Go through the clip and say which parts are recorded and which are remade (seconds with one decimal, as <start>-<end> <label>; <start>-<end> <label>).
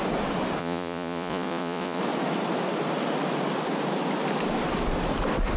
0.0-0.6 recorded; 0.6-2.0 remade; 2.0-5.6 recorded